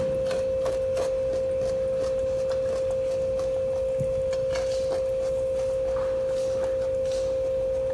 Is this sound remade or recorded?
recorded